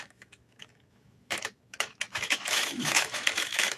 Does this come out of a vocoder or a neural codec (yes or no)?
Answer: yes